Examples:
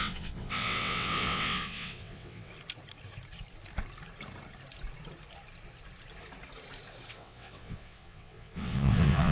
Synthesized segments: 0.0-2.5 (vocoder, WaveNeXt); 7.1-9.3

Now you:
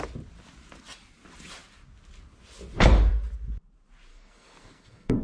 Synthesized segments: 4.1-5.2 (codec, SNAC)

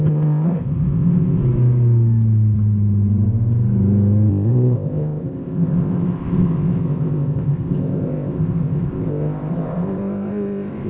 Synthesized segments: 0.0-1.4 (codec, ZipCodec); 4.3-10.9

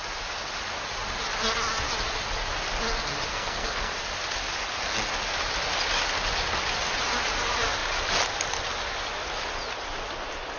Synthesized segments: 3.3-3.9 (codec, SNAC)

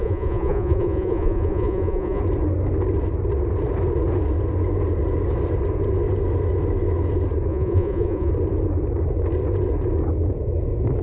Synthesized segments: 0.0-2.2 (vocoder, Vocos); 7.5-8.3

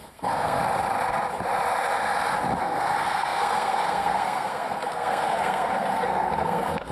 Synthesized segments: 0.0-0.6 (codec, SNAC); 2.6-6.9